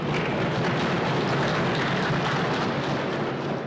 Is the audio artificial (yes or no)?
no